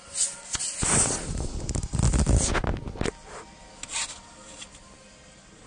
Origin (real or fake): real